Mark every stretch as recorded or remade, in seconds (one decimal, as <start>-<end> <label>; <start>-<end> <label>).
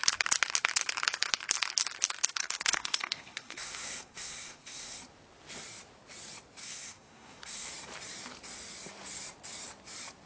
0.0-2.4 recorded; 2.4-5.0 remade; 5.0-6.6 recorded; 6.6-7.7 remade; 7.7-10.3 recorded